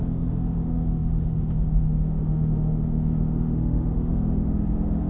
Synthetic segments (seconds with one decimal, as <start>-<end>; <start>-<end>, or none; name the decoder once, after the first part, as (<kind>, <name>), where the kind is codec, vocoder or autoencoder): 0.0-5.1 (autoencoder, DAC-VAE)

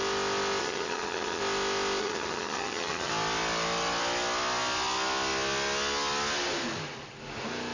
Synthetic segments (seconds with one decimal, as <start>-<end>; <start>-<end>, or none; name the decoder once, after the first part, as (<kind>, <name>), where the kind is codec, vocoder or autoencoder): 0.6-1.4 (vocoder, HiFi-GAN); 2.0-3.1